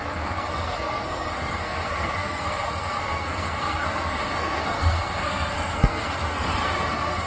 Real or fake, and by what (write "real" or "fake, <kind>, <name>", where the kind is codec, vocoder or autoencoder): fake, codec, SNAC